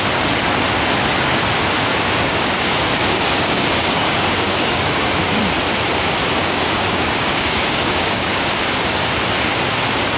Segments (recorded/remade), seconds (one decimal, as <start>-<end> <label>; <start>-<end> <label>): 0.0-1.9 recorded; 1.9-5.4 remade; 5.4-6.4 recorded; 6.4-9.1 remade; 9.1-10.2 recorded